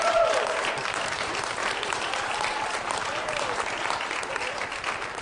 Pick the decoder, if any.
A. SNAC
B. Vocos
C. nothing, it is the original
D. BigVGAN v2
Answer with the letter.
D